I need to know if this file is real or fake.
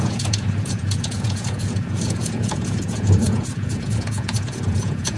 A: fake